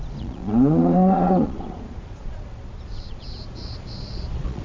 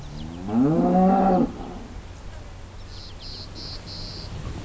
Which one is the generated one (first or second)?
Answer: first